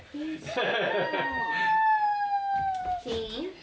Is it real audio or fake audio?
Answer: real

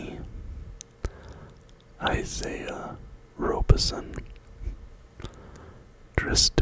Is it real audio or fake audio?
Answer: real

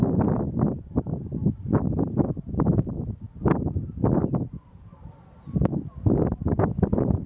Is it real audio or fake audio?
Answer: real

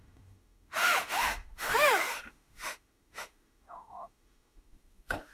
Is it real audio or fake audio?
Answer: fake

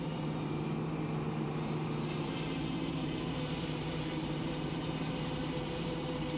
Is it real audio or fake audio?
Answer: fake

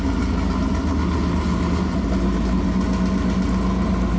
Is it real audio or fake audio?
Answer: real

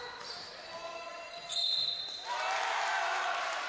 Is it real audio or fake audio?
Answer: real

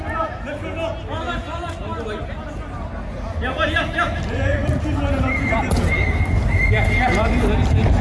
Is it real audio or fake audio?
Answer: real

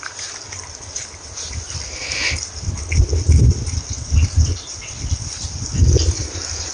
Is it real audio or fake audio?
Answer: real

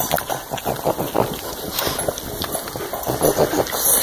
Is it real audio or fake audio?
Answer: real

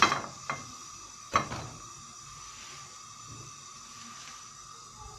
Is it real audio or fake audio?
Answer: real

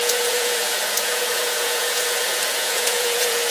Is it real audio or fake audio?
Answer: fake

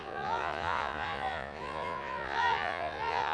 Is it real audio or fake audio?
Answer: fake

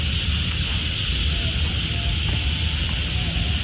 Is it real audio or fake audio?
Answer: real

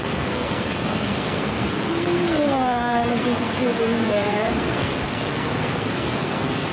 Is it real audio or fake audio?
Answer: fake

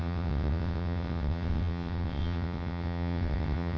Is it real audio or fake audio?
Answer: fake